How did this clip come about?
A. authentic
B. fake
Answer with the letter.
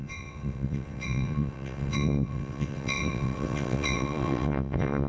B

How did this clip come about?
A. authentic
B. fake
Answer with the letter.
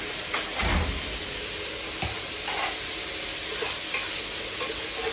A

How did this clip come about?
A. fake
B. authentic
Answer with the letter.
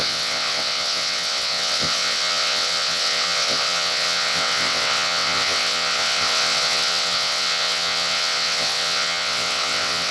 A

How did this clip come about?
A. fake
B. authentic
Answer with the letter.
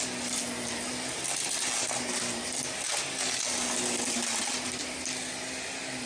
B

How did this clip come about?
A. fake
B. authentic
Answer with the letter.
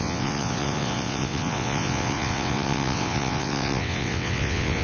A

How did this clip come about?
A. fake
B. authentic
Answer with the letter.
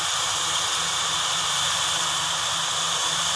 B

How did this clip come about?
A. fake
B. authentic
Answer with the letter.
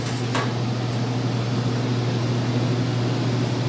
B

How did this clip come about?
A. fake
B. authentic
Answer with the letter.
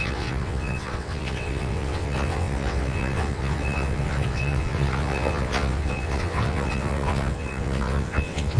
A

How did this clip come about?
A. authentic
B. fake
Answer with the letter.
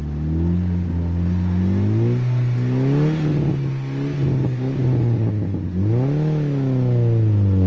A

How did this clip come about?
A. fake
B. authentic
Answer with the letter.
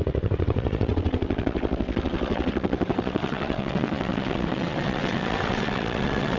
A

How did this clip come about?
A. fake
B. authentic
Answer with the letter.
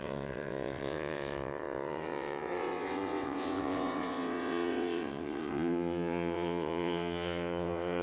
A